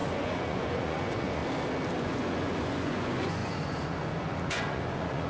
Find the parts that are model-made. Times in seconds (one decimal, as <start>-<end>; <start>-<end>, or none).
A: 0.0-1.4; 2.0-5.3